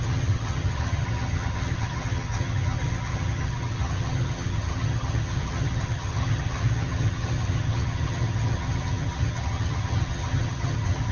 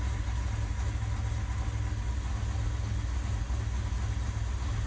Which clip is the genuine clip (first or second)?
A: second